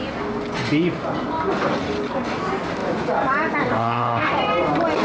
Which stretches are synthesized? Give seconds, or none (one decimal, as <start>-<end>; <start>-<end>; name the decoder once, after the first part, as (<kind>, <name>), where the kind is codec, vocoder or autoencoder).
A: 3.7-4.3 (autoencoder, DAC-VAE)